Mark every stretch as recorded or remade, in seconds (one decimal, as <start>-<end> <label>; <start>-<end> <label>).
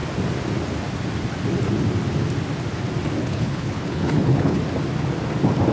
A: 0.0-3.2 recorded; 3.2-4.6 remade; 4.6-5.7 recorded